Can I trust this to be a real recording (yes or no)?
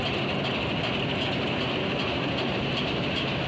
yes